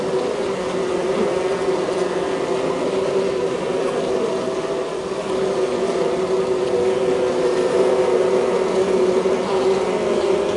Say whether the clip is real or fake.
real